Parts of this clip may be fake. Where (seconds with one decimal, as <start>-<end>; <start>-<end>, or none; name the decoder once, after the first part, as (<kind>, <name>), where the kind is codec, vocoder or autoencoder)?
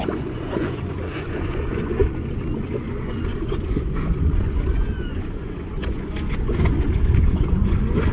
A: 0.0-8.1 (vocoder, Vocos)